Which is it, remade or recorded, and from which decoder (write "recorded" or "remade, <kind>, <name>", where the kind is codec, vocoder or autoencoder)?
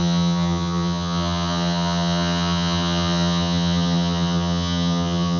remade, vocoder, HiFi-GAN